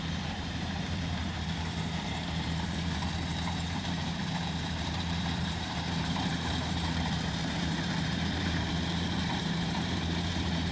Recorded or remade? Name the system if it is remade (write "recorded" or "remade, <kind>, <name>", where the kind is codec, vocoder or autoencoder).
remade, vocoder, BigVGAN v2